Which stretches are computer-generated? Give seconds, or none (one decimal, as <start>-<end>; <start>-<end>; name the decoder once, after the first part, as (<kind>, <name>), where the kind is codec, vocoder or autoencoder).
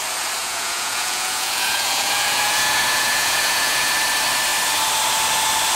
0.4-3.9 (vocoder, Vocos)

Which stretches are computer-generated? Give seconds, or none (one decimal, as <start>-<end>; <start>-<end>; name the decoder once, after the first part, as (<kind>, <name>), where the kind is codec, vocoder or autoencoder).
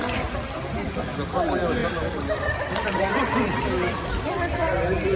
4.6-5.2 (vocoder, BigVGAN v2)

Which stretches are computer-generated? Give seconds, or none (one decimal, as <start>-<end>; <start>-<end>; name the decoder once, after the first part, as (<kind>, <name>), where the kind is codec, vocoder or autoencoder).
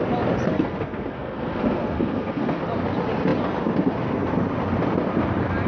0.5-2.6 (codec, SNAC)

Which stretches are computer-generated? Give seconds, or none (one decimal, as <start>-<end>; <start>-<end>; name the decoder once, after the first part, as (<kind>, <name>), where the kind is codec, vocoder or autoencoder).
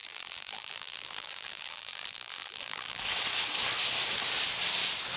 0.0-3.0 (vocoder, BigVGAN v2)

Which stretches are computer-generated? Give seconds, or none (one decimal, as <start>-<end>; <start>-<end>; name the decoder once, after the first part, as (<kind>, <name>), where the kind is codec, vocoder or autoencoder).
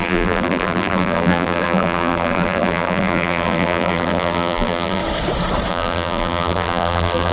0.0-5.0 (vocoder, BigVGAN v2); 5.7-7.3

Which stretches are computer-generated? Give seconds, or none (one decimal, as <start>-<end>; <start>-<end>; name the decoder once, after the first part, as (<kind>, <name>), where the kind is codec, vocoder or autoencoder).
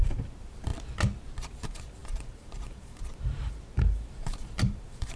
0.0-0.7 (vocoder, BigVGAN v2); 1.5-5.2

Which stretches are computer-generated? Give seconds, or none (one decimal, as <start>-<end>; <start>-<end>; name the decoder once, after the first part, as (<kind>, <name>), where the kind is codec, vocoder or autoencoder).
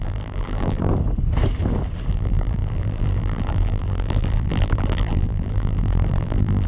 0.0-0.9 (vocoder, BigVGAN v2); 2.1-6.7